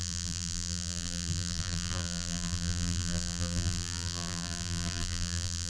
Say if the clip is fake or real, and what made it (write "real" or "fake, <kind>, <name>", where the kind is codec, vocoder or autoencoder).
fake, vocoder, BigVGAN v2